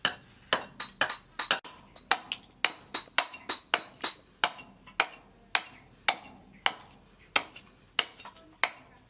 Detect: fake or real real